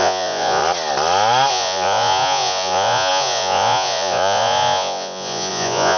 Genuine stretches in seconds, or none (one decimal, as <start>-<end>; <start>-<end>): 0.6-1.5